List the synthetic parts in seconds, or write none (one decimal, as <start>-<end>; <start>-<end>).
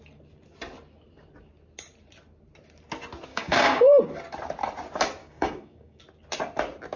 3.3-4.0; 5.2-6.0